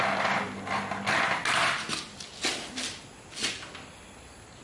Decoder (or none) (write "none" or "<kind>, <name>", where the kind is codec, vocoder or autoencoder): none